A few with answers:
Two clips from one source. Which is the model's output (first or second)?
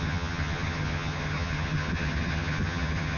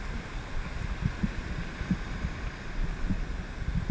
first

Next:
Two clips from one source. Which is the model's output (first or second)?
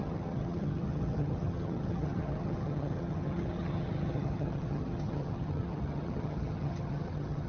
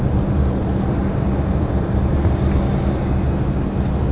first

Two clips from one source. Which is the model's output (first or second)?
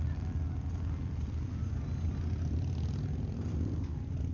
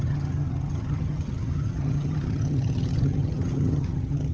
second